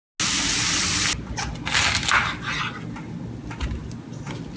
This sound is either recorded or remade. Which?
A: recorded